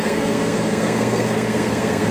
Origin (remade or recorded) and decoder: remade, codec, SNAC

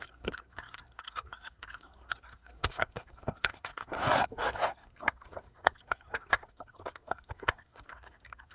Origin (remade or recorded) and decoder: remade, codec, SNAC